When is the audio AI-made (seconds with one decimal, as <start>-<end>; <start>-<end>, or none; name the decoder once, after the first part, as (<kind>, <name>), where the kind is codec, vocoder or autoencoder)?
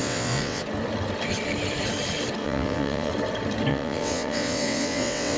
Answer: 0.0-0.6 (vocoder, WaveNeXt); 2.4-3.1; 3.7-5.4